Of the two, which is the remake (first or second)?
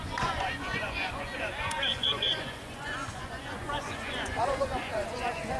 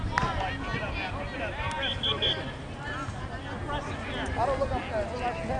first